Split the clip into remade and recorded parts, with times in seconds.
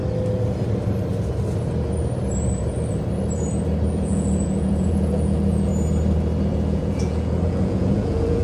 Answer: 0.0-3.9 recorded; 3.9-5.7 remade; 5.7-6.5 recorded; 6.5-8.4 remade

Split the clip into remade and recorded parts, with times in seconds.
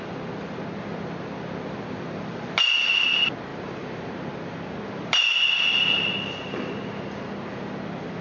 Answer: 0.0-8.2 recorded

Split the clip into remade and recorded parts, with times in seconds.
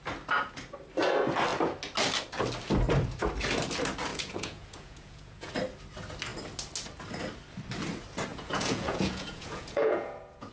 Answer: 0.0-4.1 recorded; 4.1-5.5 remade; 5.5-8.3 recorded; 8.3-10.5 remade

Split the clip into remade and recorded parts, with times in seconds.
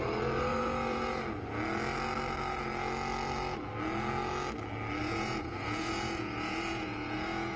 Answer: 0.0-0.5 recorded; 0.5-1.2 remade; 1.2-5.0 recorded; 5.0-7.6 remade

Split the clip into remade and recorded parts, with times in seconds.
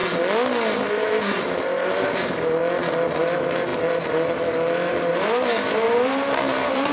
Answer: 0.0-0.9 recorded; 0.9-2.6 remade; 2.6-3.2 recorded; 3.2-6.9 remade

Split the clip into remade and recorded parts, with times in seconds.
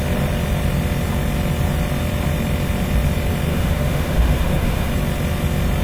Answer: 0.0-3.5 recorded; 3.5-4.9 remade; 4.9-5.8 recorded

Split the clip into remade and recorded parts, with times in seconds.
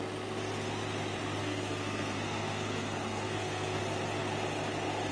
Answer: 0.0-1.4 recorded; 1.4-3.8 remade; 3.8-5.1 recorded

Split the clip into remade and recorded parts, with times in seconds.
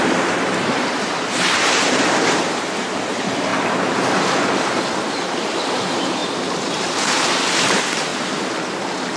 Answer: 0.0-3.5 remade; 3.5-5.1 recorded; 5.1-6.2 remade; 6.2-7.7 recorded; 7.7-8.1 remade; 8.1-9.2 recorded